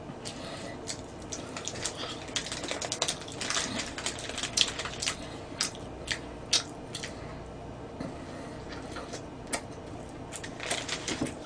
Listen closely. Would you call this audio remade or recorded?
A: recorded